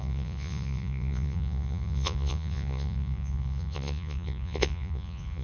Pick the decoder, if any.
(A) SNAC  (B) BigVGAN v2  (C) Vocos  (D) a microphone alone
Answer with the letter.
C